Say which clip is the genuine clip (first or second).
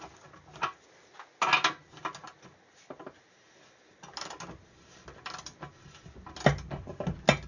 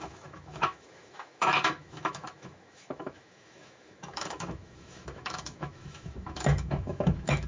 first